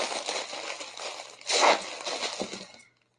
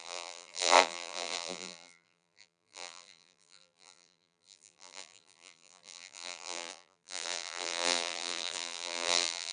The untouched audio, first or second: first